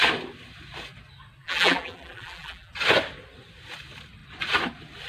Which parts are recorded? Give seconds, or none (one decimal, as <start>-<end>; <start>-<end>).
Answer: 0.0-1.4; 2.7-5.1